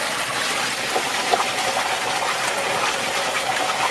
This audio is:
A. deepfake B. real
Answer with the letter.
B